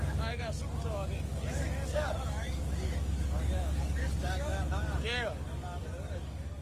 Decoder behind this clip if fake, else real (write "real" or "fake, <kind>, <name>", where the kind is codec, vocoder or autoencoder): fake, codec, DAC